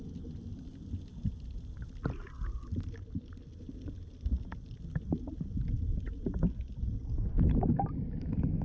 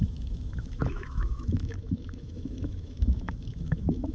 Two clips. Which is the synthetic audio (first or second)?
second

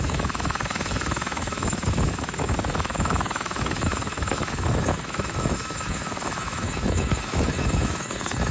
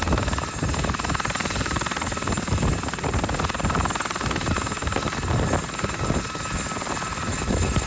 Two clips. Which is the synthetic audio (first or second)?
first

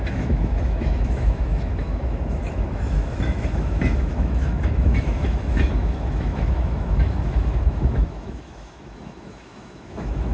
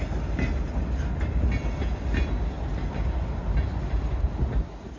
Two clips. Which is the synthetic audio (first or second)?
first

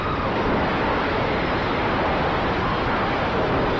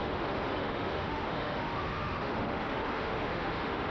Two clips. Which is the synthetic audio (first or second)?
second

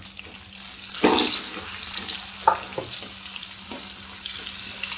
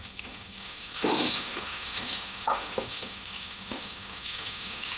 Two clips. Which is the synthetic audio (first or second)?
second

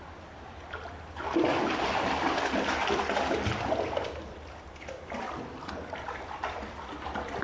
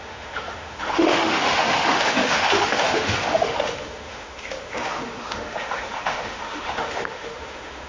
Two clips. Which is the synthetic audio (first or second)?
second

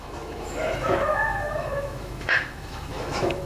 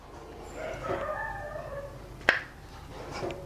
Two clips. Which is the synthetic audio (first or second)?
first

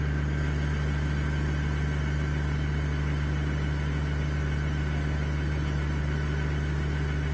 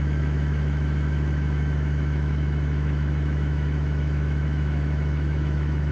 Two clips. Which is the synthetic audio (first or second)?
second